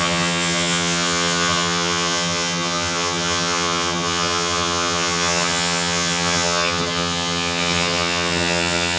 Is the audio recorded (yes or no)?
no